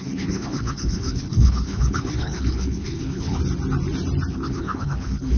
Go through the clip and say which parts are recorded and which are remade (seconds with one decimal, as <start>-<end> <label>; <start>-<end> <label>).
0.0-3.4 remade; 3.4-4.3 recorded; 4.3-5.4 remade